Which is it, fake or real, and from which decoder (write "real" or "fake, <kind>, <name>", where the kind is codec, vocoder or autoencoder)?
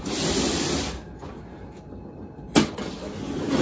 real